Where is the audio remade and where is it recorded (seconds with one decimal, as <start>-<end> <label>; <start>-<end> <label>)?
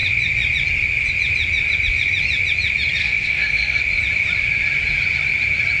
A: 0.0-3.0 recorded; 3.0-3.8 remade; 3.8-5.8 recorded